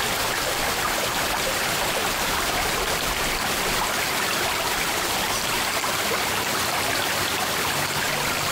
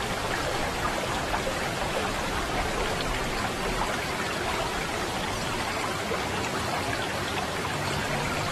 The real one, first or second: first